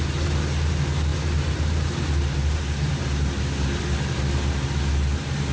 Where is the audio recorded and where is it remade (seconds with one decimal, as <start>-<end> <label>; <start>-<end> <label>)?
0.0-5.5 recorded